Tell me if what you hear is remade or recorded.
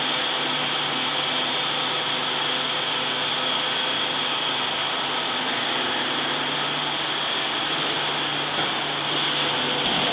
recorded